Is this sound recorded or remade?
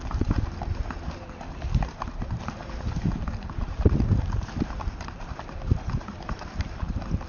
remade